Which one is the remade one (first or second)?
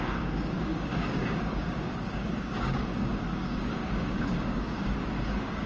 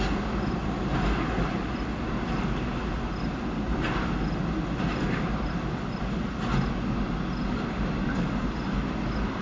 first